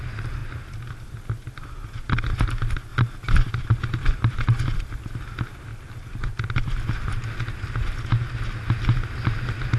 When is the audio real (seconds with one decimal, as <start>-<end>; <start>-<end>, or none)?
0.0-2.9; 3.5-4.0; 4.9-5.7; 7.1-9.8